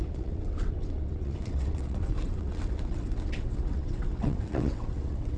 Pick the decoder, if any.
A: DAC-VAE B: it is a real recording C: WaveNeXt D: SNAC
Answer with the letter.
C